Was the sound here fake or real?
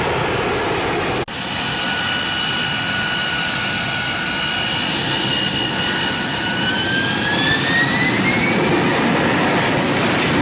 real